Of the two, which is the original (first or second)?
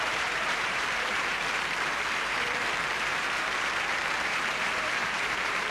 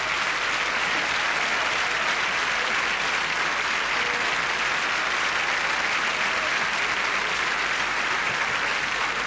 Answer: second